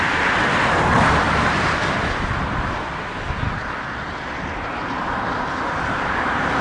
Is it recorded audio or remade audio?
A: remade